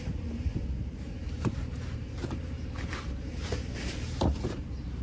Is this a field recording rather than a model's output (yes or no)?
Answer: no